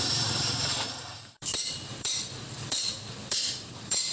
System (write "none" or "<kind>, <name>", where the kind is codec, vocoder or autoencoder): vocoder, BigVGAN v2